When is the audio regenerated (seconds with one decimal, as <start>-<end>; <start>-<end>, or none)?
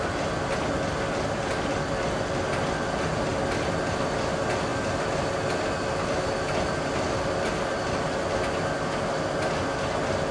none